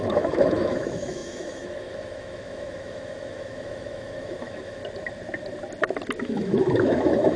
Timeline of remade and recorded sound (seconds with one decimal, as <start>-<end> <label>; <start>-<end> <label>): 0.0-4.8 remade; 4.8-6.2 recorded; 6.2-7.4 remade